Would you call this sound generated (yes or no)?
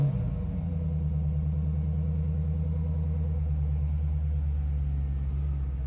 no